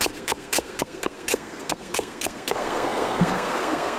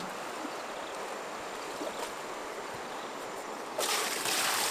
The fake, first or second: first